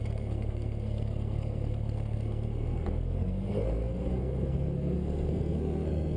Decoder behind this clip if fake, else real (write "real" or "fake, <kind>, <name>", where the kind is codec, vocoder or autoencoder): fake, codec, SNAC